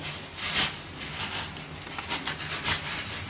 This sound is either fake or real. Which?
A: real